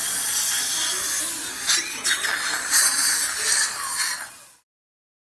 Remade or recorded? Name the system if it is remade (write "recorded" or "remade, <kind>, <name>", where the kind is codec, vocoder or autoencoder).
recorded